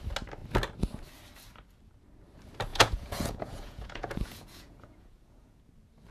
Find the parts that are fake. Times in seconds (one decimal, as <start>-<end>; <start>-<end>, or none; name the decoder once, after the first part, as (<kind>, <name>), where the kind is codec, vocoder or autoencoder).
2.7-5.6 (vocoder, Vocos)